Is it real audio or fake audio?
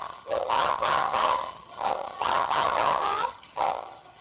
fake